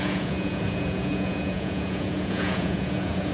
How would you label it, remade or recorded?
remade